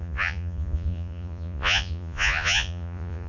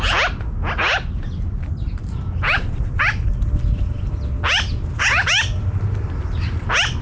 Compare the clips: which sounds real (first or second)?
second